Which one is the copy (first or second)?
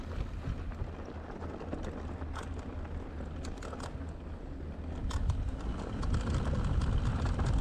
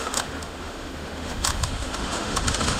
second